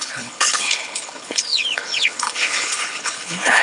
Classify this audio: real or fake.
fake